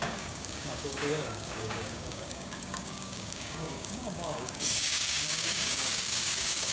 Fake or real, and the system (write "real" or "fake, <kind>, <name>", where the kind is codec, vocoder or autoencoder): fake, codec, DAC